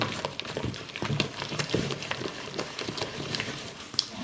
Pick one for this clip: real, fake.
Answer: fake